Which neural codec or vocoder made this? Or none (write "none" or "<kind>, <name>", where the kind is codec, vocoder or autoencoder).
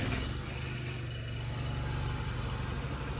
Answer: none